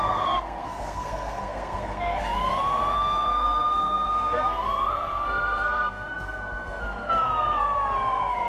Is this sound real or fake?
fake